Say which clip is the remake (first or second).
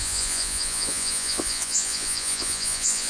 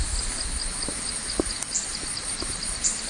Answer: first